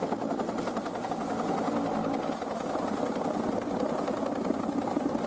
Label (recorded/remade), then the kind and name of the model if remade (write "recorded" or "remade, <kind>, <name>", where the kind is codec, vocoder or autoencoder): recorded